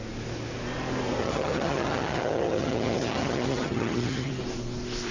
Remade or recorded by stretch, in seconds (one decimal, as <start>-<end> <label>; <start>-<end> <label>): 0.0-1.2 recorded; 1.2-4.3 remade; 4.3-5.1 recorded